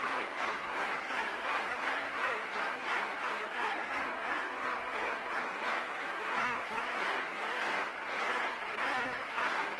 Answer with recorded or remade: remade